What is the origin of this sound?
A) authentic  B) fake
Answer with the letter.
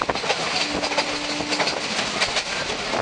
A